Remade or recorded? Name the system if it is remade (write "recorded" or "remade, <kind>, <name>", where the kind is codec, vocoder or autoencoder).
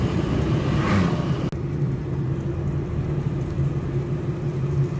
recorded